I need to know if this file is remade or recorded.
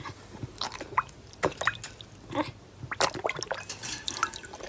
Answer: recorded